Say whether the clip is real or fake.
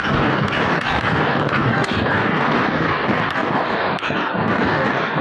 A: fake